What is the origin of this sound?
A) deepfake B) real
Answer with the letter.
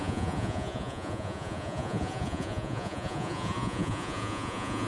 A